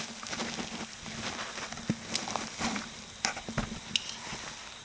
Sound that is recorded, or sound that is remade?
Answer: recorded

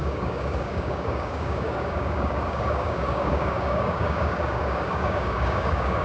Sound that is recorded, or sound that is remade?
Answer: remade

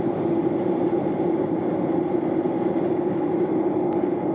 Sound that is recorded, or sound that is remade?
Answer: recorded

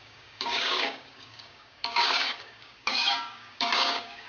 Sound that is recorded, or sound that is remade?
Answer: remade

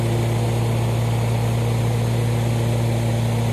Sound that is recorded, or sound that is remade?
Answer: recorded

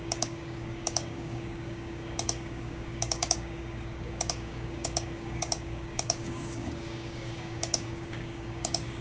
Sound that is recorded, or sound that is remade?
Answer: remade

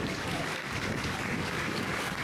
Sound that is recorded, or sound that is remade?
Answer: remade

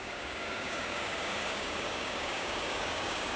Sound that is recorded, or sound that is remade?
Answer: remade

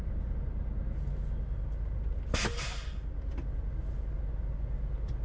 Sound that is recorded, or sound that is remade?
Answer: recorded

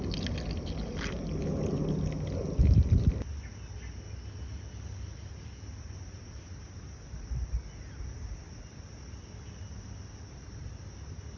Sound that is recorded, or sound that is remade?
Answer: recorded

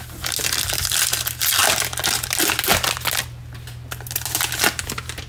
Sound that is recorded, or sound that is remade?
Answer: recorded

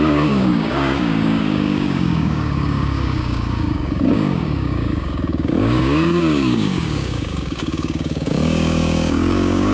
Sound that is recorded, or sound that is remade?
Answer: remade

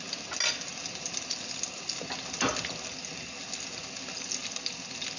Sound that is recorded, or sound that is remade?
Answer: recorded